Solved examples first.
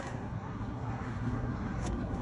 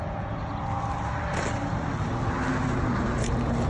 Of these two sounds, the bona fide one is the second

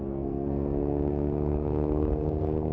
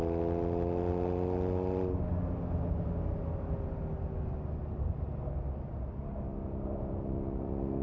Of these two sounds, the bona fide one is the second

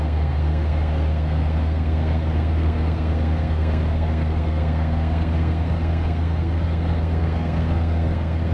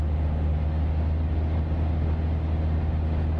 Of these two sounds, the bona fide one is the second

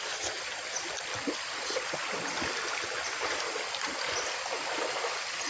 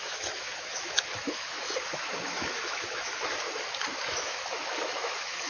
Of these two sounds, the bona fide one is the first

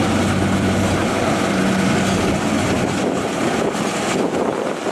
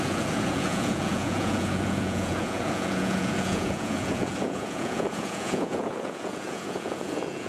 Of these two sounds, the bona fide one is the first